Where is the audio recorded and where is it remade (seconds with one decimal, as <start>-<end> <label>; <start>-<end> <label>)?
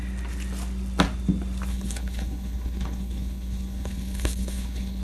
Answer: 0.0-1.7 recorded; 1.7-5.0 remade